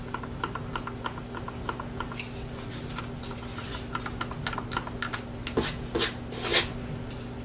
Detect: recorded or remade recorded